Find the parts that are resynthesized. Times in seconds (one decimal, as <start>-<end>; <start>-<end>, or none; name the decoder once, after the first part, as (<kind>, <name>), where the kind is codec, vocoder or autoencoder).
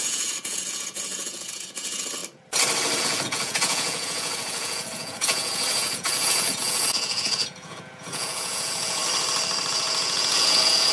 0.0-2.2 (vocoder, Vocos); 3.0-9.0; 9.7-10.9